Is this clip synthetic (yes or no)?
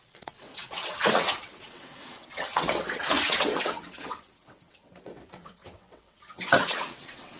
yes